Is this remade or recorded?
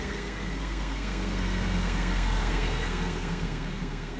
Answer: remade